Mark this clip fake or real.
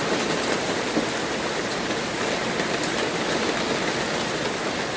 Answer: real